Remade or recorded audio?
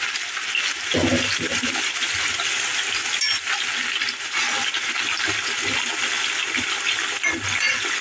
recorded